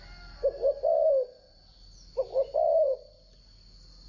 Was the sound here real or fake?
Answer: real